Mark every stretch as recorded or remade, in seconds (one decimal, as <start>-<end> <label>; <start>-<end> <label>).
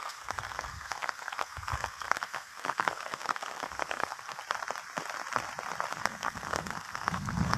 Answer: 0.0-4.4 remade; 4.4-5.9 recorded; 5.9-7.6 remade